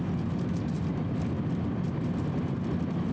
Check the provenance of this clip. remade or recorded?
recorded